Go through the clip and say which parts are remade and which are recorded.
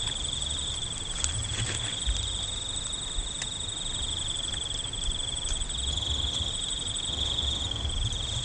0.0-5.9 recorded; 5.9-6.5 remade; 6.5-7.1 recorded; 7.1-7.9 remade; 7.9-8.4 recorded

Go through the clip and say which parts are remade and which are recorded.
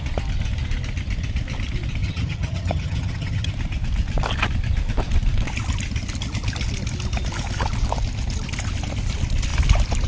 0.0-2.0 recorded; 2.0-3.5 remade; 3.5-10.1 recorded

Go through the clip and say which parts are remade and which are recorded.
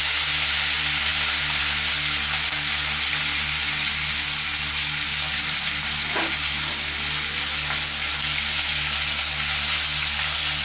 0.0-10.6 recorded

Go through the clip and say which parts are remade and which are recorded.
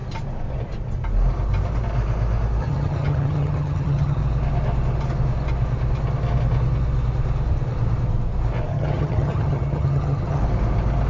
0.0-2.6 recorded; 2.6-4.2 remade; 4.2-8.7 recorded; 8.7-10.4 remade; 10.4-11.1 recorded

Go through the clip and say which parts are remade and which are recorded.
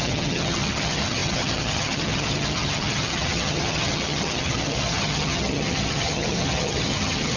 0.0-7.4 remade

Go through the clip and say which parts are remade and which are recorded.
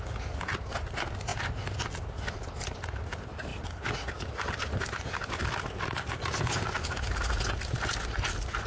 0.0-8.7 recorded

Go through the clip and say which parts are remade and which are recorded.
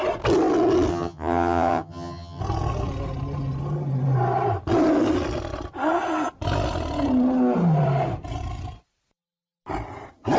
0.0-0.9 recorded; 0.9-2.4 remade; 2.4-10.4 recorded